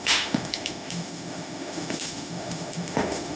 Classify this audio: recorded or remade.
remade